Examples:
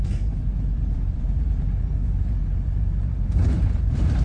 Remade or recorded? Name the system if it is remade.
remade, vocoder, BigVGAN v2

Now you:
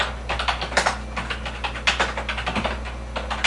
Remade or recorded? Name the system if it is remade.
recorded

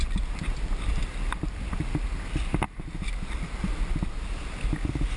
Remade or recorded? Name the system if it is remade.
recorded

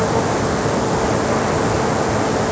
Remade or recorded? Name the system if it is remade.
recorded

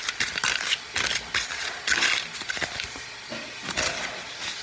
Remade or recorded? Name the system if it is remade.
recorded